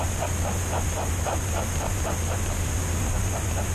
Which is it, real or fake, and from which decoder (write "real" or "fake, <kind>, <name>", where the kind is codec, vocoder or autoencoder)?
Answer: real